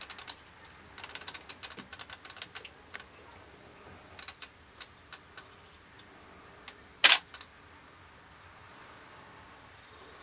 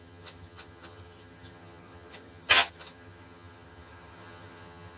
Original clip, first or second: first